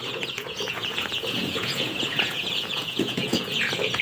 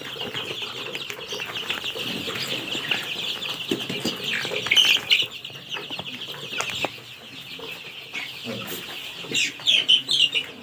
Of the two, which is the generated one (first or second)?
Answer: first